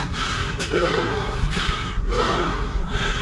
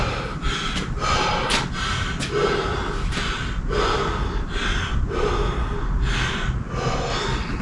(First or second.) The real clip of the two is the second